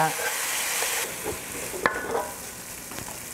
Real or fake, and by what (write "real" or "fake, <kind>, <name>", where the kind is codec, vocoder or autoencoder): real